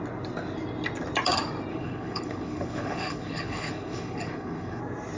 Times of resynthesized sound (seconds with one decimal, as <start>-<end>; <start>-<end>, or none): 1.7-4.8